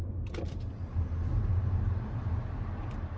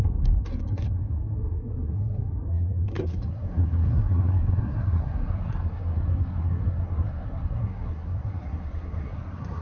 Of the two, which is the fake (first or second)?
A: second